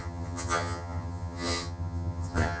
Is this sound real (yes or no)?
no